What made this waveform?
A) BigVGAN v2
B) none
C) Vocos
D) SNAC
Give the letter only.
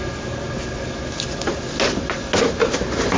B